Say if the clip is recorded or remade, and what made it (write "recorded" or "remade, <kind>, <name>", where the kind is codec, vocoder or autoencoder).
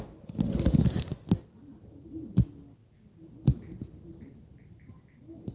recorded